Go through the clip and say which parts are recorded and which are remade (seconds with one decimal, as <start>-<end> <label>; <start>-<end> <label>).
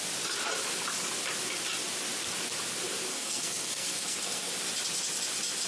0.0-3.1 recorded; 3.1-4.5 remade; 4.5-5.7 recorded